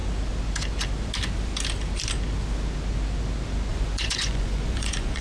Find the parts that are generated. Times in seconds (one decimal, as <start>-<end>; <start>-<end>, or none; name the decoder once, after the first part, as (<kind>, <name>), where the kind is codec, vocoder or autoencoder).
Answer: 3.7-5.2 (vocoder, Vocos)